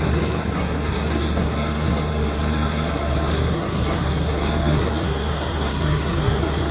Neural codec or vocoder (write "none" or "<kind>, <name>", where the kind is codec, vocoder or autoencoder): codec, SNAC